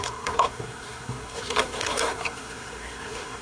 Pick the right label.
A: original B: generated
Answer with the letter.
B